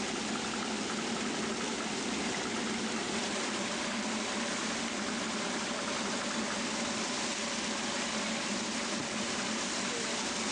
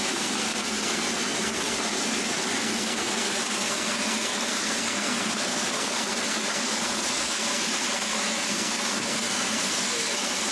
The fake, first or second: second